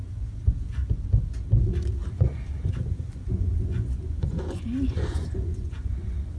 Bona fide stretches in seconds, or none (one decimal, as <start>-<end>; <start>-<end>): 0.8-2.1